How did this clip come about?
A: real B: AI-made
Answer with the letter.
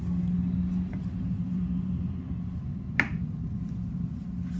A